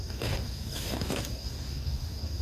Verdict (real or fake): fake